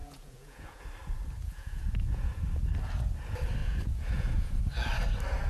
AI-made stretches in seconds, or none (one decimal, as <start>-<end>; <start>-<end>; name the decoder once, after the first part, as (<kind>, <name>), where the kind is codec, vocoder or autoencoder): 0.0-0.8 (vocoder, Vocos); 1.4-2.3; 3.6-4.6